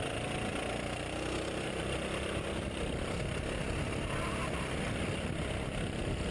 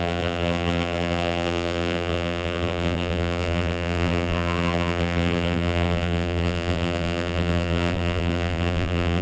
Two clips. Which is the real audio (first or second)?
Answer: first